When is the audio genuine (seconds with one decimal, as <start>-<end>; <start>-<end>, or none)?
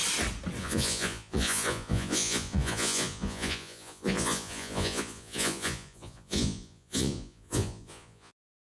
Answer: 0.0-0.6